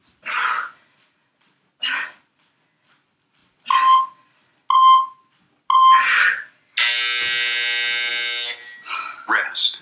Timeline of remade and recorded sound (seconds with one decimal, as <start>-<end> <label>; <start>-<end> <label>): 0.0-9.8 recorded